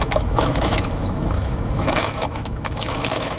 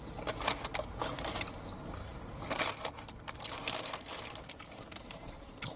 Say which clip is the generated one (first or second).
first